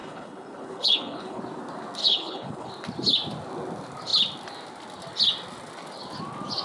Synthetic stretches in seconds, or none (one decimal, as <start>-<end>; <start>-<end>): 0.0-1.4; 2.0-2.7